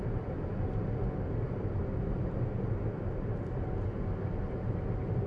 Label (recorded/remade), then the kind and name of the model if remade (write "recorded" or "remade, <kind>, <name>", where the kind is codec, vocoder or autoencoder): recorded